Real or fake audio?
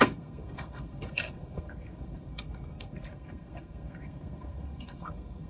fake